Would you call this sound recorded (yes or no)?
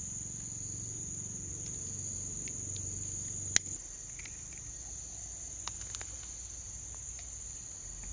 yes